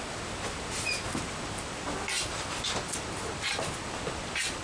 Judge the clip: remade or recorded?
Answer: recorded